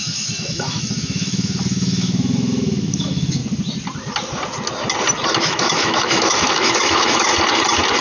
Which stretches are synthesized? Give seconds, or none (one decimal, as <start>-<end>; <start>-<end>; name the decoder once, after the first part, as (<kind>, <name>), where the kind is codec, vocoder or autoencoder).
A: 0.0-3.4 (autoencoder, DAC-VAE); 5.4-7.3